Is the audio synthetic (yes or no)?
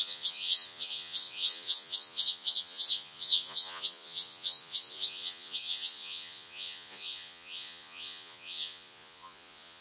yes